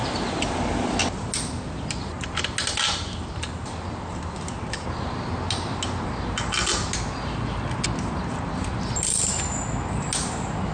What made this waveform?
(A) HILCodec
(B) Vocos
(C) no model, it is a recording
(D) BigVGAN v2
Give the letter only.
C